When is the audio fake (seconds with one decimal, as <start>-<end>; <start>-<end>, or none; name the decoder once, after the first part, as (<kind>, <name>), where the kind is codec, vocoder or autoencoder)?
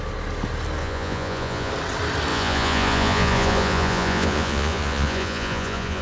0.8-1.7 (vocoder, Vocos); 2.3-6.0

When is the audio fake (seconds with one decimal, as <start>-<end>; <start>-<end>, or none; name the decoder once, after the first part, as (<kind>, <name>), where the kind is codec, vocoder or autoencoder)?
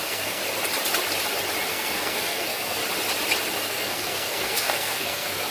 0.0-0.4 (codec, SNAC); 1.7-2.8; 3.7-5.5